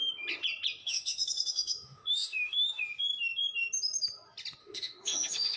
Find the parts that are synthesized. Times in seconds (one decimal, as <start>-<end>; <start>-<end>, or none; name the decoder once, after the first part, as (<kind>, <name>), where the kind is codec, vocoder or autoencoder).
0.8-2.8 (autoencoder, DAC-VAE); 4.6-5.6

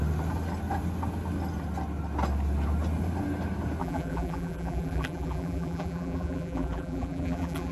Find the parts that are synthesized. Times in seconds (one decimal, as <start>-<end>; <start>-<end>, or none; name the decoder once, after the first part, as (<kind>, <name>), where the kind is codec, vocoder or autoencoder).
3.8-7.7 (vocoder, BigVGAN v2)

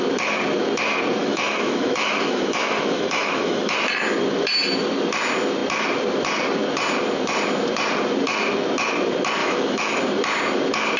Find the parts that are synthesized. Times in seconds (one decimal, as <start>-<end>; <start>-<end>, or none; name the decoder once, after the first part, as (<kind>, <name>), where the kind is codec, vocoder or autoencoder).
1.2-3.7 (autoencoder, DAC-VAE); 9.4-10.0

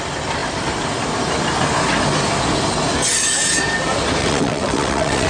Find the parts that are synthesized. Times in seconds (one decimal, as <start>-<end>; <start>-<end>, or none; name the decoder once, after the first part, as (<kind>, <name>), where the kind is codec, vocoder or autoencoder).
4.2-5.3 (vocoder, WaveNeXt)

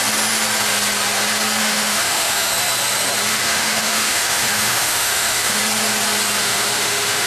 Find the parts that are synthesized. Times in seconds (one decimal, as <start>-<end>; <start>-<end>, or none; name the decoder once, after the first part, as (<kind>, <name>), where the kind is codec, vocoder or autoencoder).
1.6-2.5 (autoencoder, DAC-VAE); 3.3-5.6; 6.4-7.3